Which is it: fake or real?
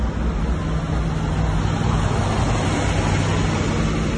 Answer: real